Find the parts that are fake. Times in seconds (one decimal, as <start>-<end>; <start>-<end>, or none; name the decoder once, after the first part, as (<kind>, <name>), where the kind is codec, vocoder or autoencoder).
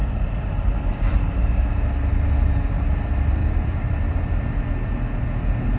0.0-0.5 (vocoder, BigVGAN v2); 3.4-4.2